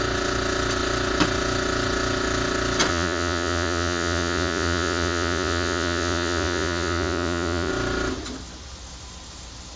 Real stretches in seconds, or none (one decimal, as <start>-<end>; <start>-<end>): 0.0-2.9; 7.7-9.8